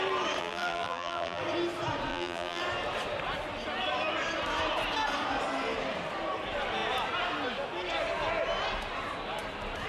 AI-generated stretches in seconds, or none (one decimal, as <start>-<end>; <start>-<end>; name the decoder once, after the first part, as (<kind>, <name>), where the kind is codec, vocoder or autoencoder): 0.4-1.4 (vocoder, BigVGAN v2); 2.1-2.6